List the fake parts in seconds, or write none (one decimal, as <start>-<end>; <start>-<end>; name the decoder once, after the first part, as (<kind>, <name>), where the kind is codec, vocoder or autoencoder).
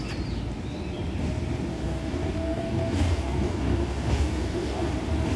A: 1.7-4.9 (codec, DAC)